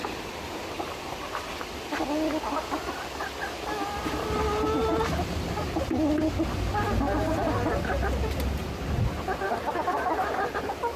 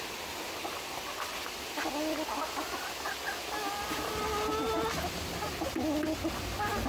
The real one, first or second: second